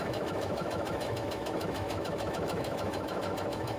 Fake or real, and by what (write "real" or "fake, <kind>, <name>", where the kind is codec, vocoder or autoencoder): fake, autoencoder, DAC-VAE